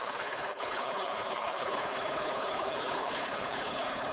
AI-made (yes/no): yes